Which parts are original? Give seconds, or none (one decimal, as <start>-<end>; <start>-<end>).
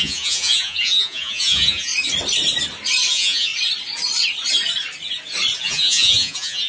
1.9-3.1; 3.5-5.6